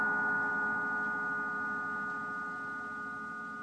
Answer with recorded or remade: recorded